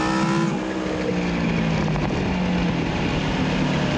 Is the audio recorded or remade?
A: recorded